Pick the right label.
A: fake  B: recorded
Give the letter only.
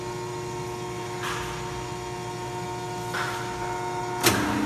B